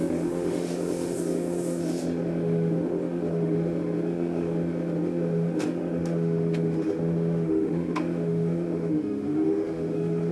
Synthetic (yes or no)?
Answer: yes